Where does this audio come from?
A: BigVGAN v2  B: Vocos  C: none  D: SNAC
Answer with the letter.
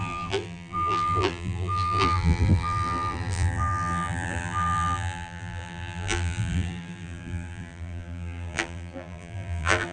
A